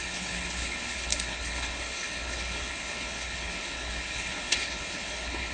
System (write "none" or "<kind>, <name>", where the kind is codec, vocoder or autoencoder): codec, HILCodec